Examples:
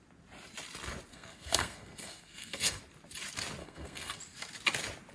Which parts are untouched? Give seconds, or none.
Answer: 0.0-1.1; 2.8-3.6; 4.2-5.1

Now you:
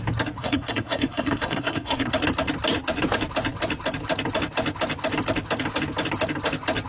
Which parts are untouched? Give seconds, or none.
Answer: 0.0-0.4; 2.1-6.9

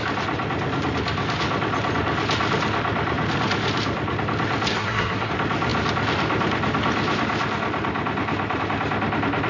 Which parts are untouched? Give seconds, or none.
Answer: 0.0-4.7; 5.3-9.5

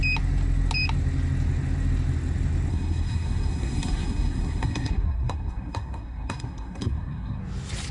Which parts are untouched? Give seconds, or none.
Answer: 0.0-2.7; 7.4-7.9

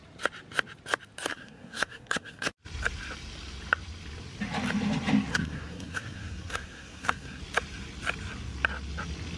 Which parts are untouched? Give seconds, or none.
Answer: 0.0-1.3; 2.5-5.3; 7.4-9.4

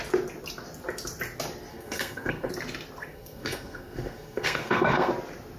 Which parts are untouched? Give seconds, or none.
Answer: 0.0-1.7; 2.5-3.1; 5.1-5.6